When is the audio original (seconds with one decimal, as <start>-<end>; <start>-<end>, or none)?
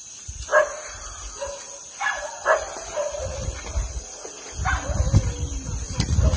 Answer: 0.0-6.4